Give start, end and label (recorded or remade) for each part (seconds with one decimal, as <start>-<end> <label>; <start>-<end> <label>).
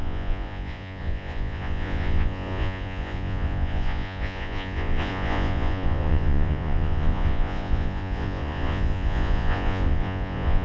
0.0-10.6 remade